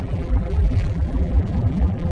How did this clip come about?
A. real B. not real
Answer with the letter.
B